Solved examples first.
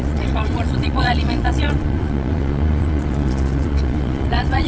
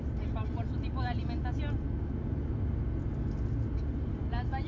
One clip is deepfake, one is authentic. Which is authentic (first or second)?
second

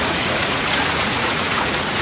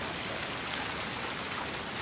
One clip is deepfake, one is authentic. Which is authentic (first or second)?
second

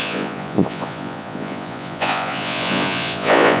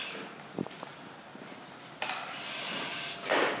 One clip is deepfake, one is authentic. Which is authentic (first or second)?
second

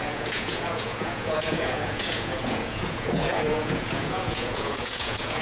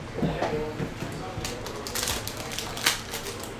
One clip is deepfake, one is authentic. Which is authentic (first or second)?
second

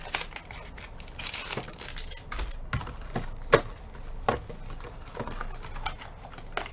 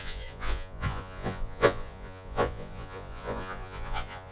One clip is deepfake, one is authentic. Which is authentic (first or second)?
first